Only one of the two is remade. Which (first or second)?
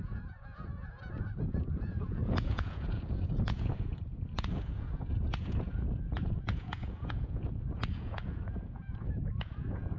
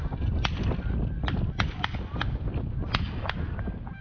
first